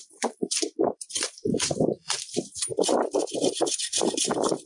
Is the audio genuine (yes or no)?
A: no